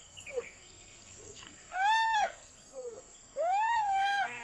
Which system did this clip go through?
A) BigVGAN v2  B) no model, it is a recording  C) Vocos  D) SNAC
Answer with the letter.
D